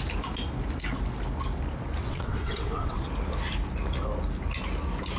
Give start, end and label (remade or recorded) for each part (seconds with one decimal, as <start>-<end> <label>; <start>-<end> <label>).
0.0-2.0 recorded; 2.0-3.0 remade; 3.0-5.2 recorded